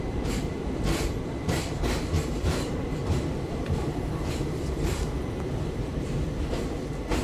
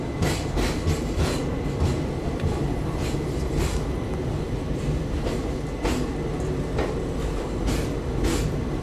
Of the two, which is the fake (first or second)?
first